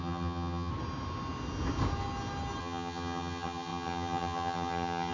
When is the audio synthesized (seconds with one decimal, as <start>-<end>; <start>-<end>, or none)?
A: 0.0-0.7; 2.6-5.1